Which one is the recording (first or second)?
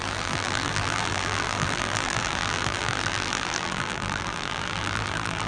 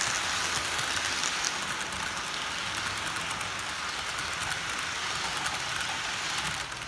second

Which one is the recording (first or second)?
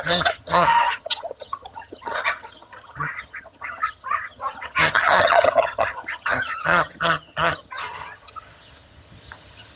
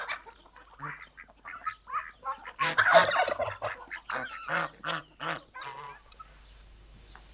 second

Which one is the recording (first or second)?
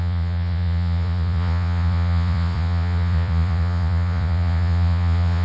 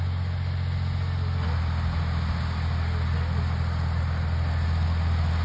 second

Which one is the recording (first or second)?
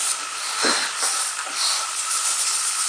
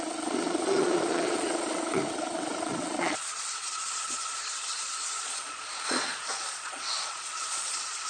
first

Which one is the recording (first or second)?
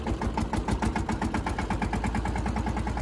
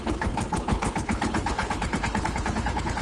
first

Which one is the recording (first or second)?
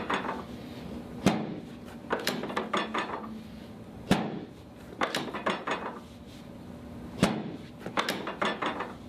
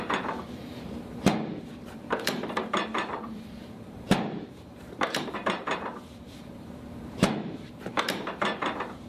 first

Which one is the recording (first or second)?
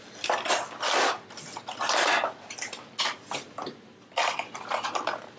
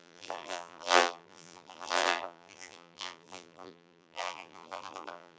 first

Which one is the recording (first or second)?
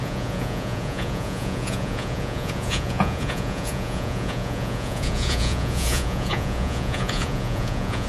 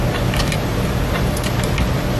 second